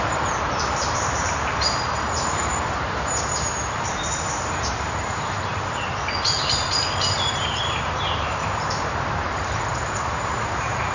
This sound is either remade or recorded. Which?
remade